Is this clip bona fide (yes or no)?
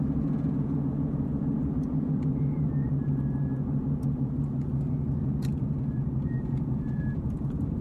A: no